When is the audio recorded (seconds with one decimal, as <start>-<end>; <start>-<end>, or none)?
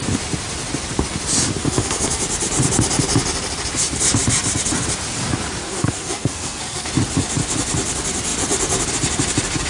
0.0-1.6; 2.2-5.6; 6.9-9.7